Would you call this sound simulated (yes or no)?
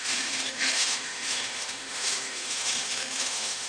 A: yes